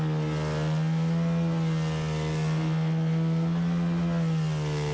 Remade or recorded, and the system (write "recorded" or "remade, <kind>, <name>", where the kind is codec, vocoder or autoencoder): recorded